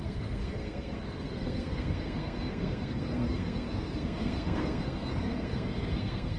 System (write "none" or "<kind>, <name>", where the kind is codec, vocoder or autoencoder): codec, SNAC